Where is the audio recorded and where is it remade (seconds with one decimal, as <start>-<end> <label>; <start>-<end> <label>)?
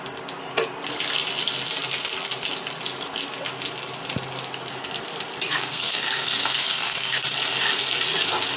0.0-5.5 recorded; 5.5-7.3 remade; 7.3-8.6 recorded